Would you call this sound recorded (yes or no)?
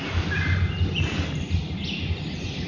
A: yes